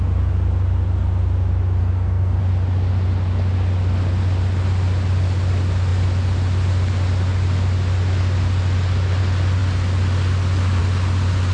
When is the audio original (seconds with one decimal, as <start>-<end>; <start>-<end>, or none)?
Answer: 0.0-1.8; 2.4-11.5